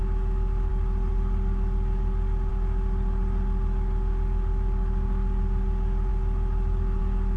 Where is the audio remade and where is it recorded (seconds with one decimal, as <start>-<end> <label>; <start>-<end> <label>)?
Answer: 0.0-7.4 recorded